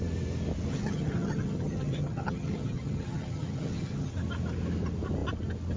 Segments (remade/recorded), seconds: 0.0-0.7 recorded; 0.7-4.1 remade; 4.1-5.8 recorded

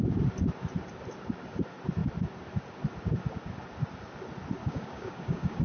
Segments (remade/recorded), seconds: 0.0-4.6 recorded; 4.6-5.6 remade

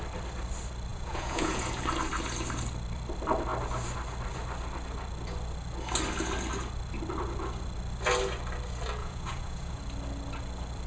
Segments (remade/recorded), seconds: 0.0-0.9 recorded; 0.9-1.7 remade; 1.7-9.0 recorded; 9.0-9.8 remade; 9.8-10.9 recorded